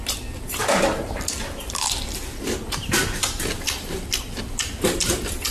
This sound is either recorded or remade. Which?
remade